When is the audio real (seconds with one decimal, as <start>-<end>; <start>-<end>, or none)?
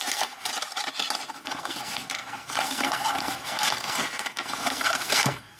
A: 0.5-1.3